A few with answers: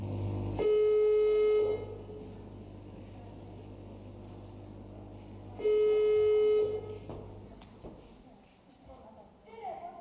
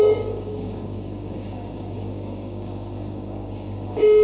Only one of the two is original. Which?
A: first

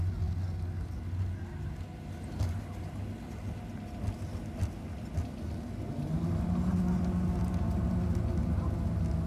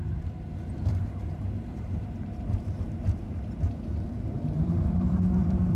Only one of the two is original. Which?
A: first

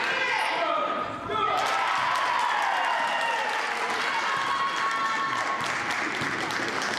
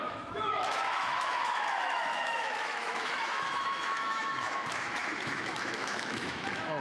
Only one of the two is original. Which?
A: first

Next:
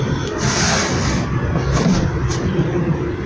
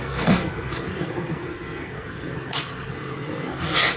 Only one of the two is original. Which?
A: first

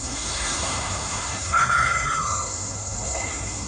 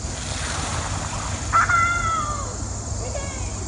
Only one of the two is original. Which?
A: second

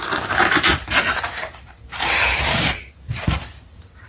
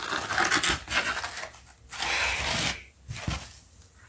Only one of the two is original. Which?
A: second